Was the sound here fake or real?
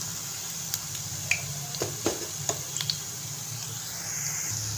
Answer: real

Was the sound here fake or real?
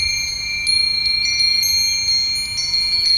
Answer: real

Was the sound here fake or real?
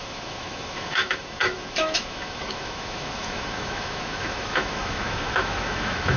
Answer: fake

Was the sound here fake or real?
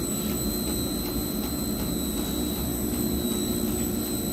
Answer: real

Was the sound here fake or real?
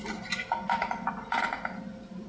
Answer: real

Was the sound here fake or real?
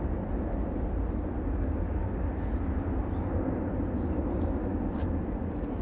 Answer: real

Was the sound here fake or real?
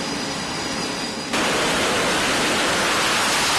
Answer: real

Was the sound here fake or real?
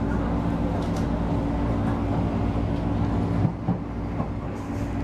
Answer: real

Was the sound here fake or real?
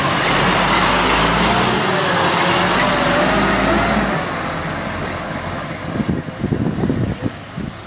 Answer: real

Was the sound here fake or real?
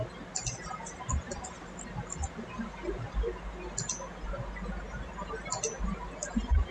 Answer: real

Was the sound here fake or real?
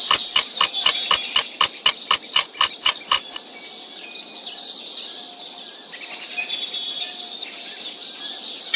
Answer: real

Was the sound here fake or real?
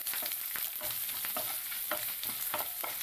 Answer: real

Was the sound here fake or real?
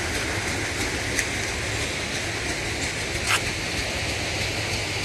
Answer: real